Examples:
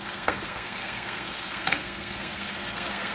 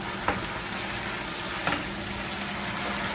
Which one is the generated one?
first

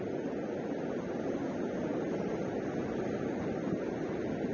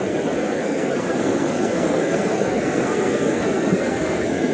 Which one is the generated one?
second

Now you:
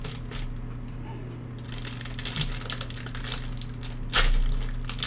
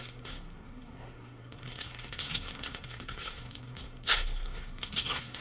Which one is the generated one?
second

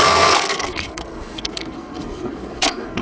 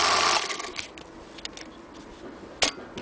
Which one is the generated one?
first